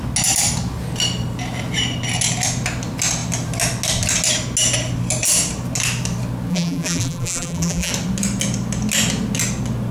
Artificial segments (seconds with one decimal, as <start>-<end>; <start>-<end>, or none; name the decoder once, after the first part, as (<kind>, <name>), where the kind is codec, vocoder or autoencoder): 6.5-7.9 (vocoder, BigVGAN v2)